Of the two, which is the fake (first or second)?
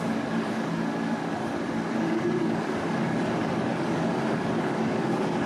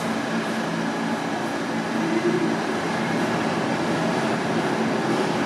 first